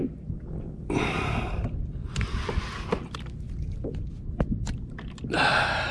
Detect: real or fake real